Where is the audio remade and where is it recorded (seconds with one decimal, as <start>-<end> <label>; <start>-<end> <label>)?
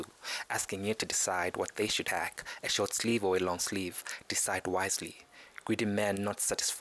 0.0-6.8 recorded